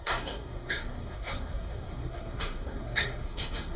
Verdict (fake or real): fake